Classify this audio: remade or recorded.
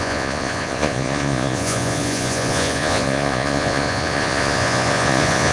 remade